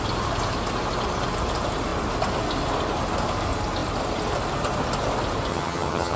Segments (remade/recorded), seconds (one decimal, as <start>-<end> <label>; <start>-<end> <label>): 0.0-5.5 recorded; 5.5-6.2 remade